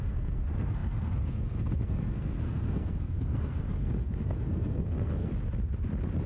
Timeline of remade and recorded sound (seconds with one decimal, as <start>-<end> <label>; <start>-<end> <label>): 0.0-5.3 remade; 5.3-6.3 recorded